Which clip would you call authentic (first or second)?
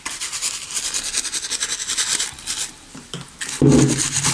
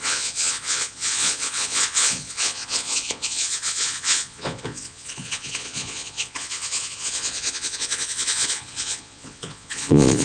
first